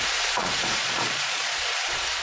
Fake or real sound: fake